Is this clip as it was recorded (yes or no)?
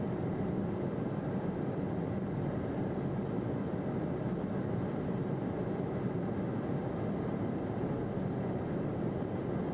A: yes